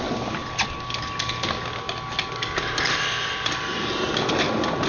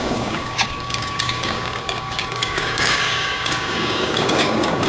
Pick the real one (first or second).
first